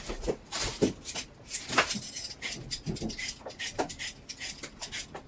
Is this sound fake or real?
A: real